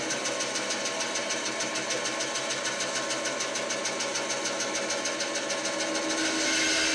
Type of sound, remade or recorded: recorded